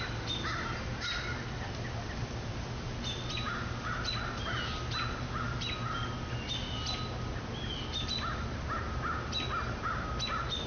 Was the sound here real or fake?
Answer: real